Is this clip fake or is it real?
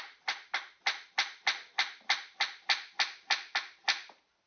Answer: real